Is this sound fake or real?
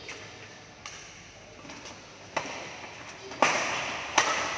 real